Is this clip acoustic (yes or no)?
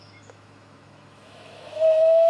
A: no